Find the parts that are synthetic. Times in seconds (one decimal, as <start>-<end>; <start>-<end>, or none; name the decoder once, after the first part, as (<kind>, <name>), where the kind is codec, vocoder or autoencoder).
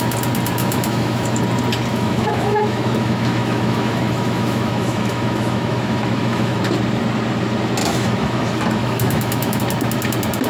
0.6-1.4 (autoencoder, DAC-VAE); 1.9-6.6; 7.8-9.6